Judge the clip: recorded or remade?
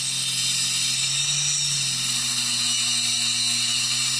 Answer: recorded